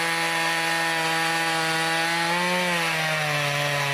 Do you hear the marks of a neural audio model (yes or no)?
no